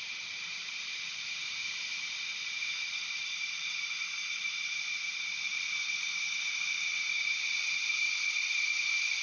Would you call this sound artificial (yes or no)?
yes